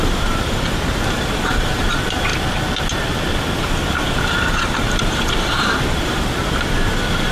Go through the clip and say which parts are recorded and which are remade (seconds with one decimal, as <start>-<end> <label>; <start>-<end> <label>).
0.0-2.3 remade; 2.3-3.6 recorded; 3.6-7.3 remade

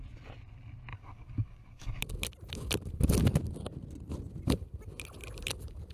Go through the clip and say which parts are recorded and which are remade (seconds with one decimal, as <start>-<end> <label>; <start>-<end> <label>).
0.0-0.9 recorded; 0.9-2.0 remade; 2.0-5.9 recorded

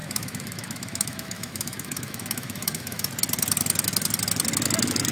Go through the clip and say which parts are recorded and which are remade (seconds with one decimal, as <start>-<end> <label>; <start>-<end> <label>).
0.0-3.1 remade; 3.1-5.1 recorded

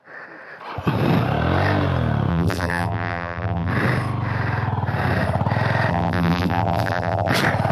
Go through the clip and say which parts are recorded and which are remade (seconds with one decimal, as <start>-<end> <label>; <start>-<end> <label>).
0.0-2.3 recorded; 2.3-3.7 remade; 3.7-5.9 recorded; 5.9-7.3 remade; 7.3-7.7 recorded

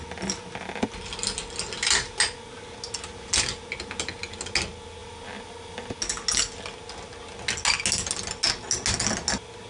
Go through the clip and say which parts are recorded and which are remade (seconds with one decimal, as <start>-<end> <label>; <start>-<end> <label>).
0.0-9.7 recorded